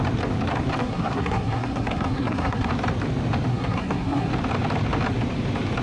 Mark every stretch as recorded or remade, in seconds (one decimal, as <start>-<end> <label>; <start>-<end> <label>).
0.0-0.8 recorded; 0.8-2.7 remade; 2.7-3.5 recorded; 3.5-4.3 remade; 4.3-5.8 recorded

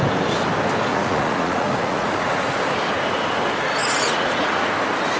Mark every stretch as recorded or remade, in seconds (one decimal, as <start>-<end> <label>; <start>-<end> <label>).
0.0-0.9 recorded; 0.9-2.6 remade; 2.6-3.8 recorded; 3.8-4.7 remade; 4.7-5.2 recorded